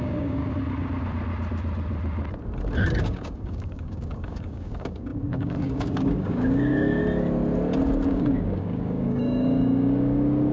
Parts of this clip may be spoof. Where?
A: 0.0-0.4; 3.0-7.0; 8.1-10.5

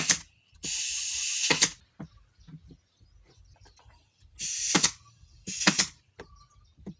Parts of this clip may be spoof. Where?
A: none

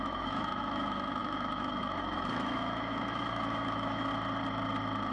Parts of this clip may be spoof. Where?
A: 0.0-4.1